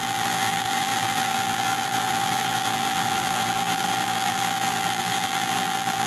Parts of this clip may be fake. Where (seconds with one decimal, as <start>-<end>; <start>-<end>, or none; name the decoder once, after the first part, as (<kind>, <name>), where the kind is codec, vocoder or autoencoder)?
0.0-6.1 (vocoder, BigVGAN v2)